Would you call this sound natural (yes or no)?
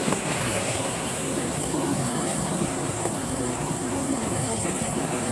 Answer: no